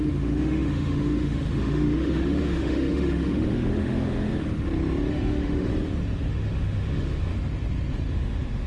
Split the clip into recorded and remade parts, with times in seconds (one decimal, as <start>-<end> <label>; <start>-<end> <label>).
0.0-4.3 remade; 4.3-5.1 recorded; 5.1-5.7 remade; 5.7-6.3 recorded; 6.3-7.3 remade; 7.3-8.1 recorded; 8.1-8.7 remade